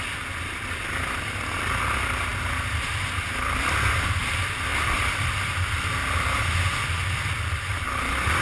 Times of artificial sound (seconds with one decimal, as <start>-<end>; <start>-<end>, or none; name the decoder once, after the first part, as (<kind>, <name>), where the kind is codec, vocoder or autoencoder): 4.7-5.3 (vocoder, BigVGAN v2); 7.0-7.6